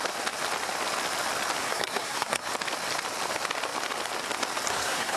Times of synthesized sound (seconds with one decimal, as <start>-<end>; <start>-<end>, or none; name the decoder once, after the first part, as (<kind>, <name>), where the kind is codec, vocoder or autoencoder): 1.6-2.5 (codec, SNAC); 4.7-5.2